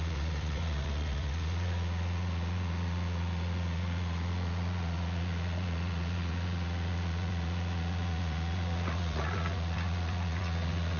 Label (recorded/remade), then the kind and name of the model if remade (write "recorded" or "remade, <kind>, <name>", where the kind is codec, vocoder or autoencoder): remade, vocoder, Vocos